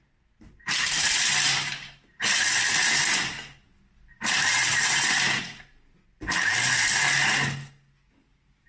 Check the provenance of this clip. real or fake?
real